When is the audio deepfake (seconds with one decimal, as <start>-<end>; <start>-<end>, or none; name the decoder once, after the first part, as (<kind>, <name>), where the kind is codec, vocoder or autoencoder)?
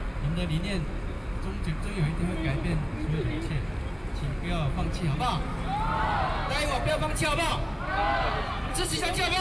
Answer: none